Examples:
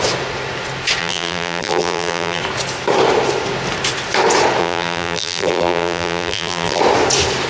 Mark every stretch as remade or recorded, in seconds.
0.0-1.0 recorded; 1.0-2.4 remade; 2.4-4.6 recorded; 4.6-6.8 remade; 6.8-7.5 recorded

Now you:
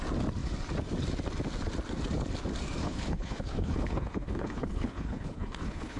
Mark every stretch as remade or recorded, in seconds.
0.0-2.8 recorded; 2.8-6.0 remade